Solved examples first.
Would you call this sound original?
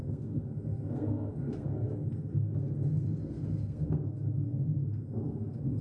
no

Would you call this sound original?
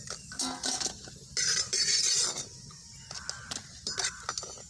yes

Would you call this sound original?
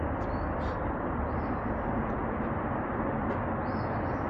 yes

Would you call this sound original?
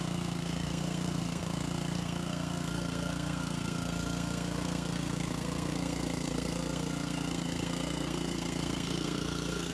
no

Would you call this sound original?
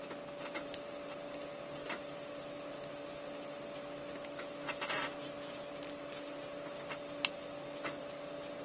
yes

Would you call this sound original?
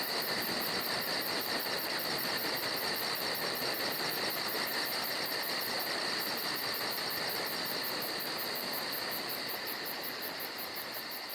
yes